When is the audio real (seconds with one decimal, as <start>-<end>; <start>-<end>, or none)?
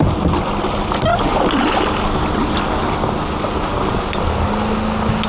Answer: 0.0-5.3